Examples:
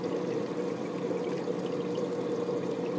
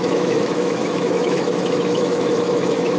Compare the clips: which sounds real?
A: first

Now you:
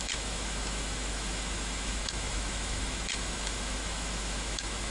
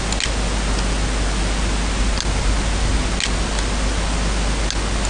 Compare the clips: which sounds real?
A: second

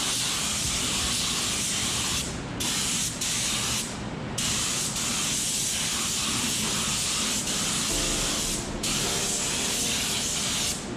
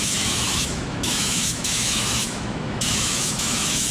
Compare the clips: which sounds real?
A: first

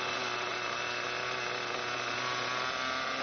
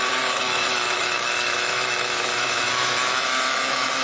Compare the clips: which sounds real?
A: first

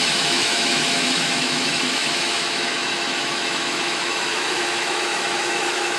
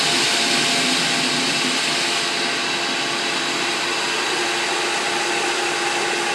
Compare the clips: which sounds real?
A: second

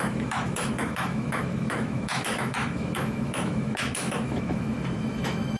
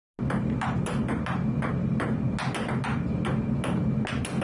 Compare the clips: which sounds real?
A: second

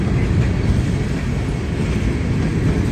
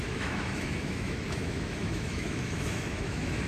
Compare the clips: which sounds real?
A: first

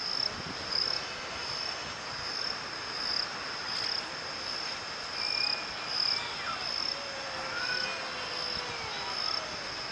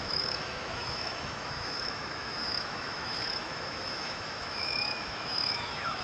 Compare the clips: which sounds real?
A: first